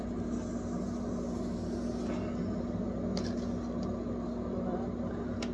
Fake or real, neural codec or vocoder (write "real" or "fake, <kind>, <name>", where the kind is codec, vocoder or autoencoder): real